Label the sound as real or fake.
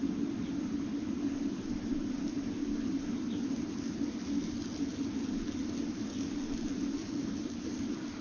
real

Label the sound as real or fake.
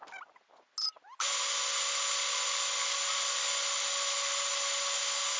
real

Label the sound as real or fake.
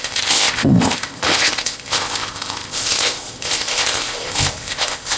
fake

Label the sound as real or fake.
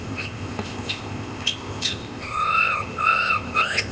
fake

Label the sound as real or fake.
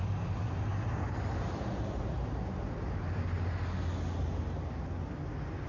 real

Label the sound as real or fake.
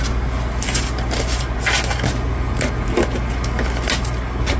real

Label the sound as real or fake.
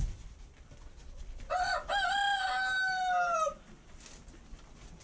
real